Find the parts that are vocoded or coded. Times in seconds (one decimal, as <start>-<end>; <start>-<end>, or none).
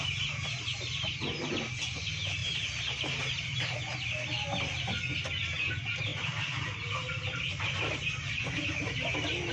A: 2.4-3.8; 6.1-8.7